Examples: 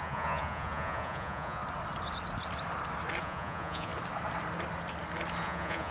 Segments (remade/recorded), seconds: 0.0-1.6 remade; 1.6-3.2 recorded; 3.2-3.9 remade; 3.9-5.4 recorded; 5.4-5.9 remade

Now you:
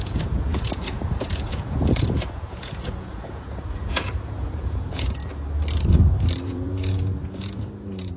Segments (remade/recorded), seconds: 0.0-5.2 remade; 5.2-6.4 recorded; 6.4-8.2 remade

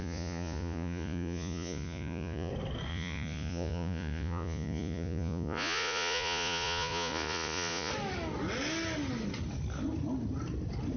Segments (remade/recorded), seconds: 0.0-2.5 remade; 2.5-2.9 recorded; 2.9-7.9 remade; 7.9-11.0 recorded

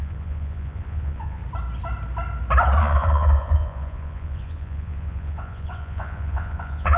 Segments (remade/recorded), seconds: 0.0-1.4 remade; 1.4-2.8 recorded; 2.8-7.0 remade

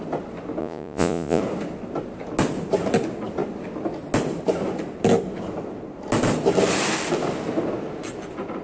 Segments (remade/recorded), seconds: 0.0-0.6 recorded; 0.6-1.4 remade; 1.4-8.6 recorded